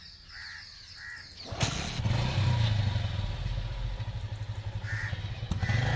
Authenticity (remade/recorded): recorded